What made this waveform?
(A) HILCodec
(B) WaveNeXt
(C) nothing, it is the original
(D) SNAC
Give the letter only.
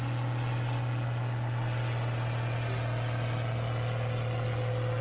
C